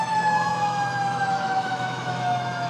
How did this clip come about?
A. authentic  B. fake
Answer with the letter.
B